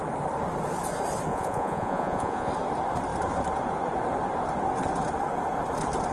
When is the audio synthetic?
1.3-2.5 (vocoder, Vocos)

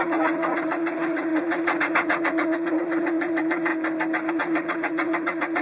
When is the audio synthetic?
0.0-3.7 (vocoder, Vocos); 4.3-5.6

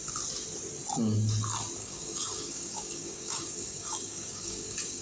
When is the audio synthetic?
1.8-5.0 (codec, DAC)